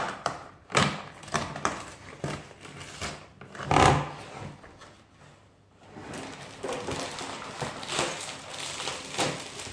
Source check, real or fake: real